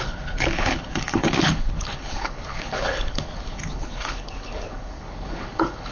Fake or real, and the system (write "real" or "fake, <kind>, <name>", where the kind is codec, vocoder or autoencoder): fake, codec, HILCodec